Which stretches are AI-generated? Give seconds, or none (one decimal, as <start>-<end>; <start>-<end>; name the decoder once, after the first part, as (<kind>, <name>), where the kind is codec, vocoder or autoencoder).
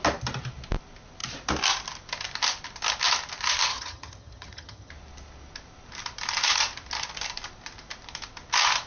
3.7-4.9 (vocoder, HiFi-GAN)